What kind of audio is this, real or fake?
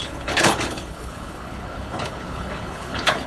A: fake